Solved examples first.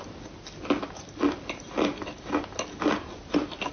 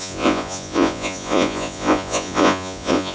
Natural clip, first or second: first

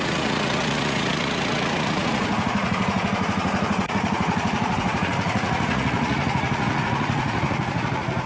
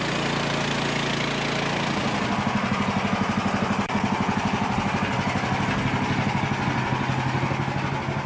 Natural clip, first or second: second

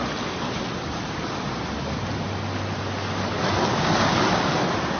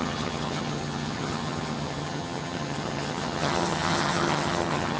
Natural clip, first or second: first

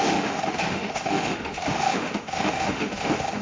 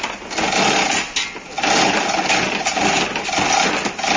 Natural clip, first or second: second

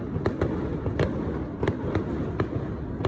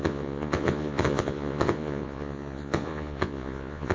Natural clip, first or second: first